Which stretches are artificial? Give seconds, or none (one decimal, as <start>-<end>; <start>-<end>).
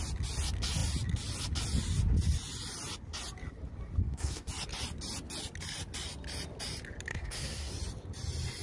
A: 4.0-4.5; 7.1-7.7